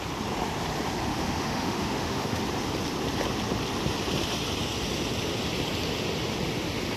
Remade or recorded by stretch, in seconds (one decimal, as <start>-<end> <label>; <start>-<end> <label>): 0.0-1.1 recorded; 1.1-2.4 remade; 2.4-7.0 recorded